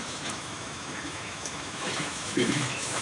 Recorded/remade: remade